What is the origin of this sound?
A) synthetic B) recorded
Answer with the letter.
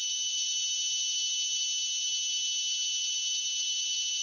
B